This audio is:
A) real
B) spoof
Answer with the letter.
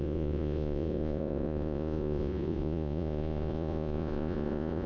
B